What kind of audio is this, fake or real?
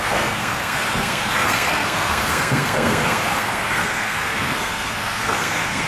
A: fake